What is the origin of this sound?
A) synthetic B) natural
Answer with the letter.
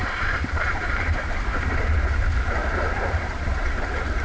A